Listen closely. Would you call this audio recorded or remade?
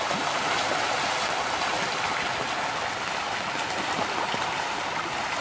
recorded